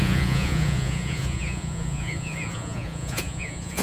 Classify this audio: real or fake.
fake